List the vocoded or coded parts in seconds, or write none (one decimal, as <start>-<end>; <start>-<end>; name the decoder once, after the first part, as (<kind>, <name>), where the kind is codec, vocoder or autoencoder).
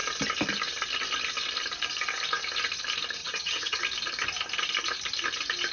3.2-3.8 (vocoder, HiFi-GAN)